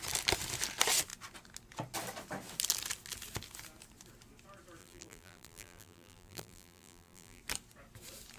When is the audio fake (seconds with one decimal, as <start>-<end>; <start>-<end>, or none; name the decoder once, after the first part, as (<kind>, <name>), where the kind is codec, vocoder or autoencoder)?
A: 4.8-7.4 (vocoder, BigVGAN v2)

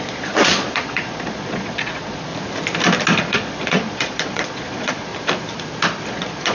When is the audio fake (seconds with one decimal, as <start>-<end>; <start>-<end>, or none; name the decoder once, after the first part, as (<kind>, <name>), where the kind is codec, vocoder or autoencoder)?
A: 0.0-2.3 (vocoder, Vocos); 3.2-5.1; 6.1-6.5

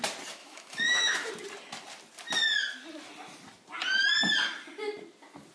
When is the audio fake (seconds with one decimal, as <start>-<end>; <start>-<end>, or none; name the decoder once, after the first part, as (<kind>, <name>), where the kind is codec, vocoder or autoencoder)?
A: 0.4-1.3 (autoencoder, DAC-VAE)

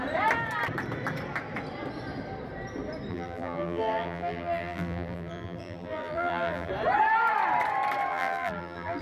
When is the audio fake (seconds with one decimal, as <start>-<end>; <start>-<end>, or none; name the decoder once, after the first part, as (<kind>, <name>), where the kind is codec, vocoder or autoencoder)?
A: 3.1-6.7 (vocoder, BigVGAN v2); 8.1-9.0

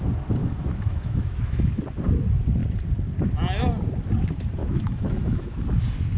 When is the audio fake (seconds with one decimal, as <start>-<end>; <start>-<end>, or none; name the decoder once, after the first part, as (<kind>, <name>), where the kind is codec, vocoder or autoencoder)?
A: 0.4-1.8 (autoencoder, DAC-VAE); 4.6-5.6

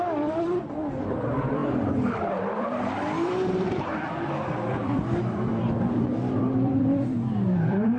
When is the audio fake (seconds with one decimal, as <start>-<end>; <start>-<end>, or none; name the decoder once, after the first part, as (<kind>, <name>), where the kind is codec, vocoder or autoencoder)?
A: 0.0-8.0 (vocoder, BigVGAN v2)